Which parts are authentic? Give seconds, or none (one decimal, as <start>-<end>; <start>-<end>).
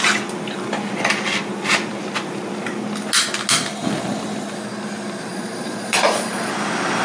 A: 0.0-5.3; 6.5-7.0